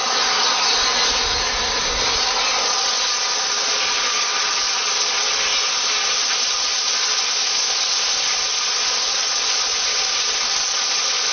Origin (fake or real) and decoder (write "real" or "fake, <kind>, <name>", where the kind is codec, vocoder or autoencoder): real